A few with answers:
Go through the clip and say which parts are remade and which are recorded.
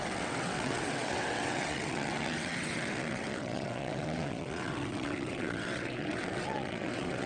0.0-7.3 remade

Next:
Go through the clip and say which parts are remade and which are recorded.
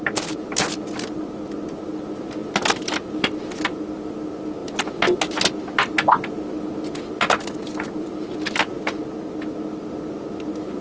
0.0-10.8 recorded